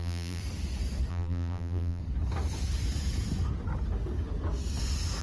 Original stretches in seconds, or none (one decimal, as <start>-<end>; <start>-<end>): 0.4-1.1; 2.0-5.2